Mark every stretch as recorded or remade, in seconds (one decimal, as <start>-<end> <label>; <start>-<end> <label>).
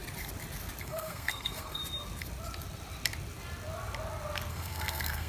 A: 0.0-0.8 recorded; 0.8-1.8 remade; 1.8-4.5 recorded; 4.5-5.3 remade